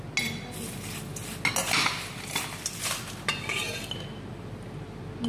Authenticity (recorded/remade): recorded